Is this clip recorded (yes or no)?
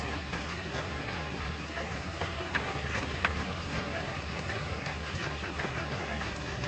no